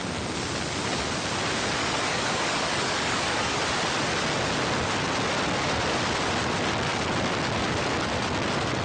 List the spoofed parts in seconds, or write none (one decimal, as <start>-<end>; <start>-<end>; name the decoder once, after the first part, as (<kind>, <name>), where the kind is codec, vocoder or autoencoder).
1.8-3.6 (codec, DAC)